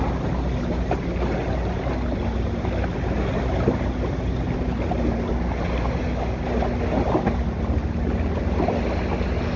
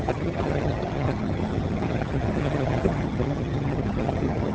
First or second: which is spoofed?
second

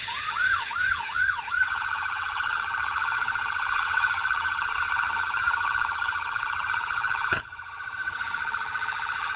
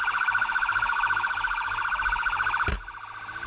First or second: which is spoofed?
first